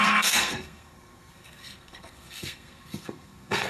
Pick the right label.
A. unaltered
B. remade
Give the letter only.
B